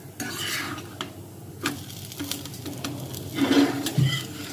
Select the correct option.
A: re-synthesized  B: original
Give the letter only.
B